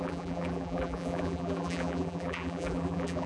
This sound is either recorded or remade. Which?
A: remade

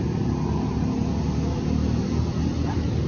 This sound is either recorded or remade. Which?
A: recorded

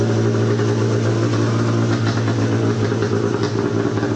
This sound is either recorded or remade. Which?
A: recorded